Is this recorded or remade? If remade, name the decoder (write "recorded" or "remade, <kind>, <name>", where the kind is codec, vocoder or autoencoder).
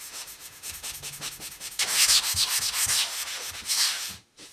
remade, autoencoder, DAC-VAE